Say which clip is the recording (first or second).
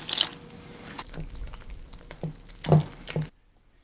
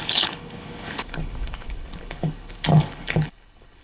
first